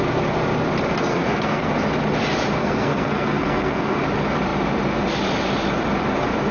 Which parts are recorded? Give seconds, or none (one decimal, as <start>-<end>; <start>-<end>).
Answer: 0.0-1.1; 1.7-2.6; 4.0-6.5